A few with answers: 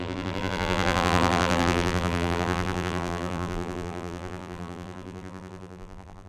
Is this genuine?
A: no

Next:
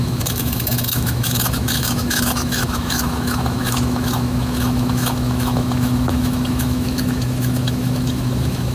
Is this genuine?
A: no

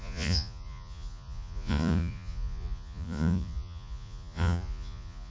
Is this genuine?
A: no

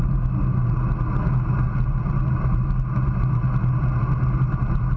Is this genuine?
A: yes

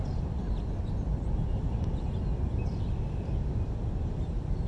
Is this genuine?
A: yes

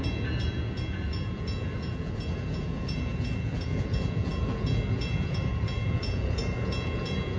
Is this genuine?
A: no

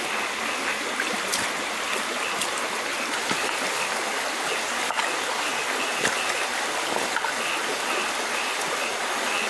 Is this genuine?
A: yes